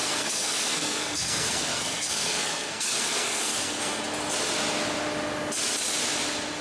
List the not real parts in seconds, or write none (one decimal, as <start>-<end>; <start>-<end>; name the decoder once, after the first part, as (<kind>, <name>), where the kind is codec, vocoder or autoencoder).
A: 0.0-4.0 (codec, SNAC)